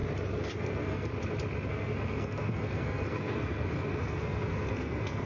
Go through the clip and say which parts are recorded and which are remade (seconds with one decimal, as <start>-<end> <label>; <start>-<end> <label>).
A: 0.0-0.6 recorded; 0.6-1.1 remade; 1.1-1.7 recorded; 1.7-5.3 remade